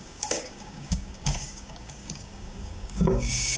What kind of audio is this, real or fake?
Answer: fake